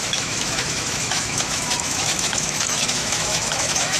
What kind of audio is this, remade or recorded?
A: remade